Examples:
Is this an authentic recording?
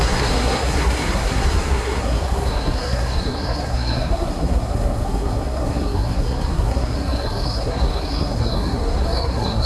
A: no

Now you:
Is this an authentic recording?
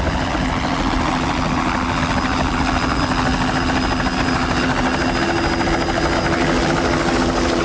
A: yes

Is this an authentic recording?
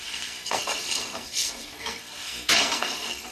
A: no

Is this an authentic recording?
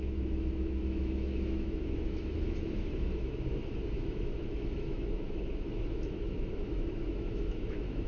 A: no